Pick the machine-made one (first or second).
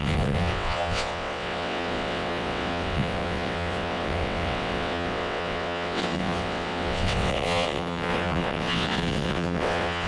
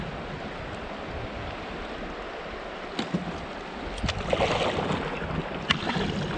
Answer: first